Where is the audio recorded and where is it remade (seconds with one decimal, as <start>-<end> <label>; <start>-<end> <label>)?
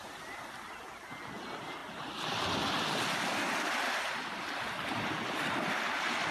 0.0-6.3 recorded